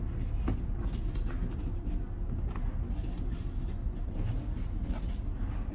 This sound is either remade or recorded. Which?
recorded